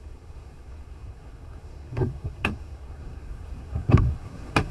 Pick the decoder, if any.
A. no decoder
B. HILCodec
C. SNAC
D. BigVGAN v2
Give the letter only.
C